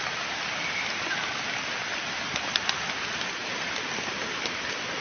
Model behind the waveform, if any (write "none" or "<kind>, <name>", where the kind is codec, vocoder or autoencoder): none